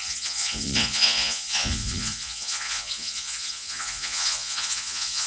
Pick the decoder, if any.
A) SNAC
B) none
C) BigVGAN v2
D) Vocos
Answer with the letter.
D